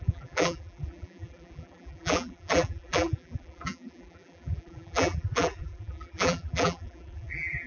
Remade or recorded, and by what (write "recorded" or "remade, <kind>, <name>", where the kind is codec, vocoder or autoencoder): remade, vocoder, BigVGAN v2